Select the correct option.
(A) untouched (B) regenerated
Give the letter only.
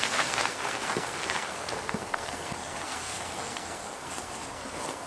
B